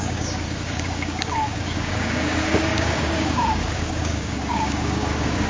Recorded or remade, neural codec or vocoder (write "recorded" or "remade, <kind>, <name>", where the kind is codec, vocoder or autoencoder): remade, codec, DAC